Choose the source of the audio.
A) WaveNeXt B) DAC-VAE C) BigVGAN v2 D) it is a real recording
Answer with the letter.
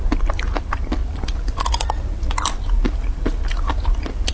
D